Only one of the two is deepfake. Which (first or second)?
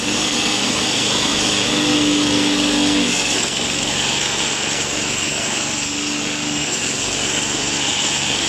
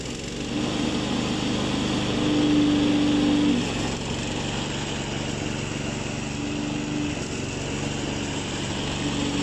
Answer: first